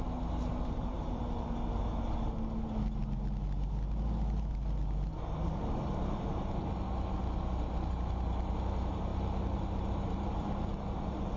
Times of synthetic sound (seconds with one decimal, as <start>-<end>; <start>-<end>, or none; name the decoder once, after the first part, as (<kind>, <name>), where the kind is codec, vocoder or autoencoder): 0.5-1.2 (vocoder, BigVGAN v2)